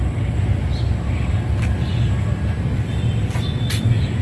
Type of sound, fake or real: real